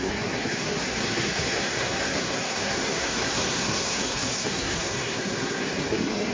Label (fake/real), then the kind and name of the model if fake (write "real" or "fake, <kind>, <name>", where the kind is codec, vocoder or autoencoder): fake, codec, SNAC